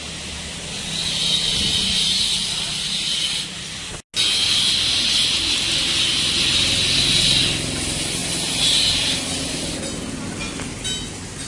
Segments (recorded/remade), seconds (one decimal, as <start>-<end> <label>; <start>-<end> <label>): 0.0-11.5 recorded